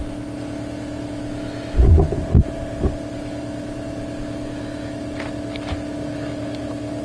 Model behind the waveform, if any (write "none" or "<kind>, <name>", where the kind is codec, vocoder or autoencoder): none